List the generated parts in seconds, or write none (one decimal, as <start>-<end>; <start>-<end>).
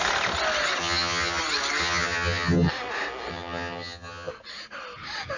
0.8-1.4; 1.8-2.7; 3.3-4.3